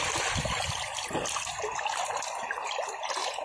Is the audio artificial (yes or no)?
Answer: no